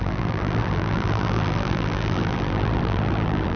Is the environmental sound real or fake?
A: fake